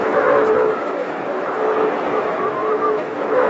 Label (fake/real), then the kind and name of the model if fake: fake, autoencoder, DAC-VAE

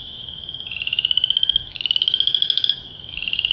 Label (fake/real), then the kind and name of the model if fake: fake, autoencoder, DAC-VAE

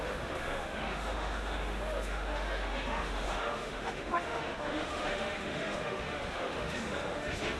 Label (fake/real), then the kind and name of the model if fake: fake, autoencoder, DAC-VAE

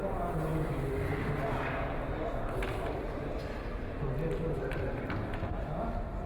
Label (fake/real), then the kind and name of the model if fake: real